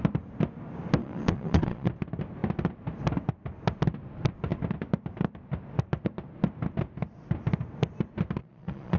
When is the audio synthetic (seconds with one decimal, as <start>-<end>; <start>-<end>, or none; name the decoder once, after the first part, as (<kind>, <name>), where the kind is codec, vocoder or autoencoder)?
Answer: 1.0-1.9 (vocoder, Vocos); 8.4-9.0